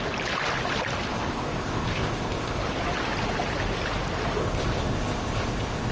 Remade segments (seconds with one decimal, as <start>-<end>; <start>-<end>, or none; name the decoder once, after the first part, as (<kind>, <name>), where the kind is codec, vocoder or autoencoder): 1.1-2.6 (codec, ZipCodec); 4.4-5.9